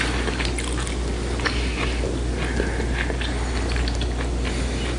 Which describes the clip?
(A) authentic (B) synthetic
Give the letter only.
A